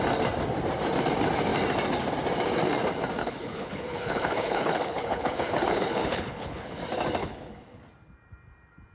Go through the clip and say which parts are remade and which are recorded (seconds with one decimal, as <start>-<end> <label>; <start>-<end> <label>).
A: 0.0-3.2 recorded; 3.2-6.8 remade; 6.8-7.2 recorded; 7.2-7.8 remade; 7.8-8.9 recorded